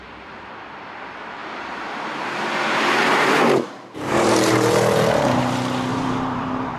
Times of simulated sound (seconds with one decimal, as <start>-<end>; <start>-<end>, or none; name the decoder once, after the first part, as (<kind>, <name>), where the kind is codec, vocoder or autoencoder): 1.4-5.4 (vocoder, BigVGAN v2); 5.9-6.8